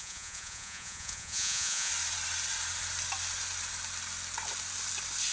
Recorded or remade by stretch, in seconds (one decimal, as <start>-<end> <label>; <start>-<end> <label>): 0.0-1.9 remade; 1.9-5.3 recorded